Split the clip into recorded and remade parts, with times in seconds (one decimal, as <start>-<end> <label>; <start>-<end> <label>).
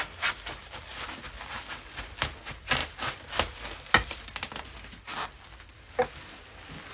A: 0.0-6.9 recorded